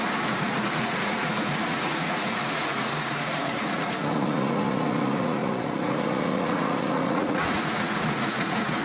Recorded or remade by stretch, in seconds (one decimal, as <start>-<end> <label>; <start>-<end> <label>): 0.0-8.8 remade